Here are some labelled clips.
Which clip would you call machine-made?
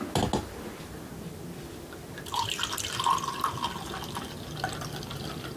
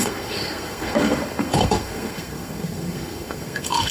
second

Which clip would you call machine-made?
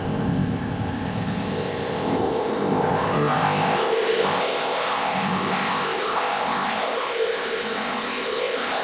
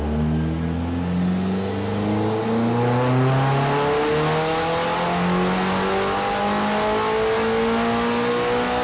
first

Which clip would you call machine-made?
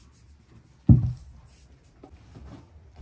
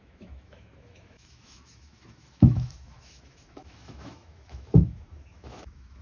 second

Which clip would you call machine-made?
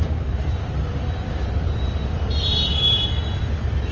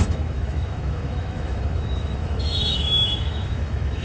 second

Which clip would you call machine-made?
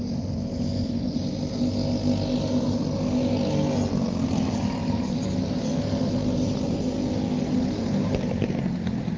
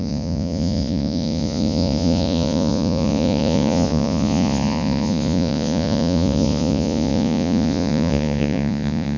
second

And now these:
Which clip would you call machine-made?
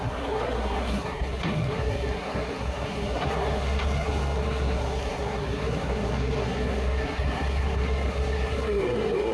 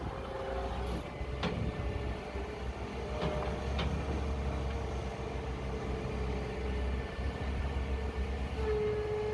first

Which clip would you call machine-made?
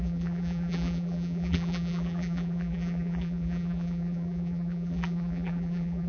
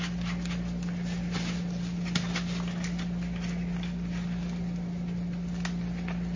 first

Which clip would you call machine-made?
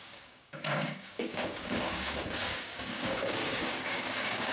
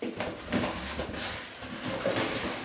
first